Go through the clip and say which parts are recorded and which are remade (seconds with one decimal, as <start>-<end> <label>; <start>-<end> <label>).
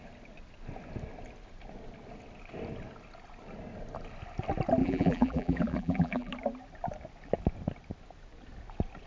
0.0-4.8 recorded; 4.8-6.3 remade; 6.3-9.1 recorded